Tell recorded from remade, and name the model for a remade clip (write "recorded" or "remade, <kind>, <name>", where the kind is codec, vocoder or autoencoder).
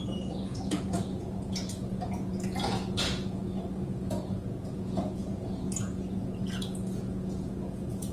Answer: remade, vocoder, Vocos